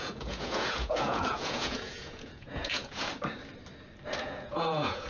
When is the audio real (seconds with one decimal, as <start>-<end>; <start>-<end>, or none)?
3.1-4.2